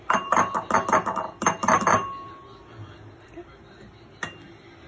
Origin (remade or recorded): recorded